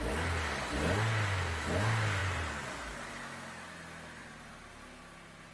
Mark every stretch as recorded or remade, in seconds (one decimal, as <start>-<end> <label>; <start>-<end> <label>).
0.0-2.2 recorded; 2.2-3.1 remade; 3.1-4.2 recorded; 4.2-4.7 remade; 4.7-5.5 recorded